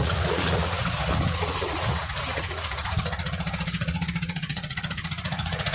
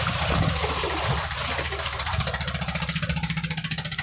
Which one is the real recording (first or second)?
second